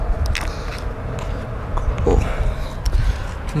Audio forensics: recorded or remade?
recorded